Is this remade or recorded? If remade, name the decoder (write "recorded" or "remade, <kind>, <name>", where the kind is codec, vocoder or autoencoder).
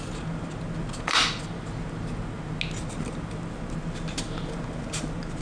recorded